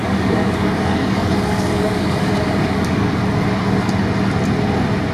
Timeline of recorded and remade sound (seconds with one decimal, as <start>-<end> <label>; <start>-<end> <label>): 0.0-3.1 remade; 3.1-5.1 recorded